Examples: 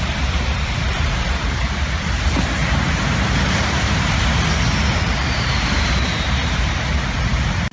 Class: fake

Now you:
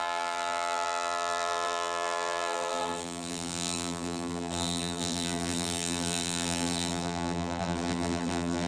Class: fake